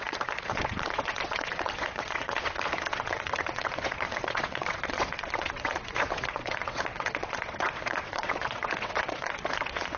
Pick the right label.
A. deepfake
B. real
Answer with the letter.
A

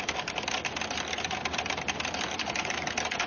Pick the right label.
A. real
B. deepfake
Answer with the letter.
A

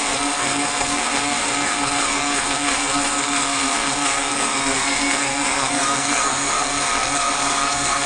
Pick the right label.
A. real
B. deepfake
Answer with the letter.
B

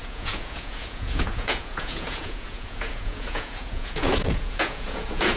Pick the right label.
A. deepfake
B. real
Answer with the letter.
A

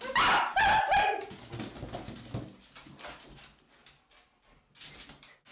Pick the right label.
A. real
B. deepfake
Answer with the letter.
A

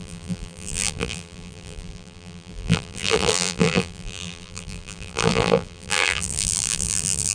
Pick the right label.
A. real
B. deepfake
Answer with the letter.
B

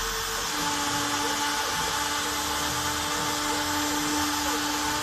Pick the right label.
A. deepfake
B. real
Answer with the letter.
B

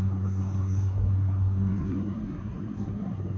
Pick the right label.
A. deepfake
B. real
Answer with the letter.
A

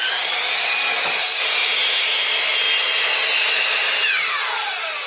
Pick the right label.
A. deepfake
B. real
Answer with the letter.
B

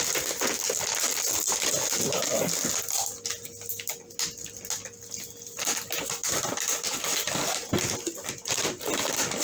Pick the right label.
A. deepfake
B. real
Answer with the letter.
B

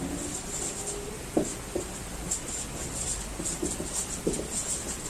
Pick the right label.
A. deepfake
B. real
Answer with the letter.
B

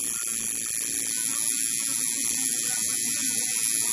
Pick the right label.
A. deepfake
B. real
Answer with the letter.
B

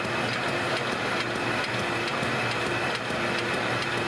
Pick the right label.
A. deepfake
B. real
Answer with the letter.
B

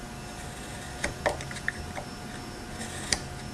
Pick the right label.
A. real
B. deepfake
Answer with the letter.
A